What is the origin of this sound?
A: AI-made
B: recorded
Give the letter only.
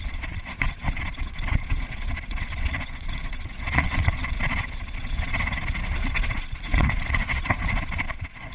A